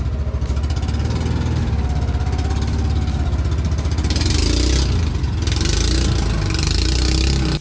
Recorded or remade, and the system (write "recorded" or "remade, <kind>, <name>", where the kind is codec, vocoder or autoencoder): recorded